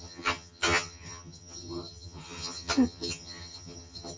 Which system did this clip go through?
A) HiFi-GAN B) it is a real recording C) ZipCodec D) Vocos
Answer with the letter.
A